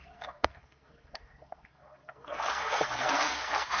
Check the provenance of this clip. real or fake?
fake